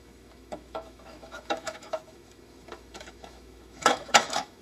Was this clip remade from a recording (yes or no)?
yes